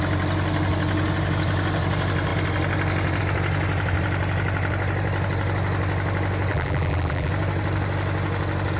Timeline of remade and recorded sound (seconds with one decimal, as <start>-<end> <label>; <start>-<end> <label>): 0.0-6.5 recorded; 6.5-7.3 remade; 7.3-8.8 recorded